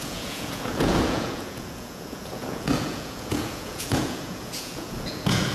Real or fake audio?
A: fake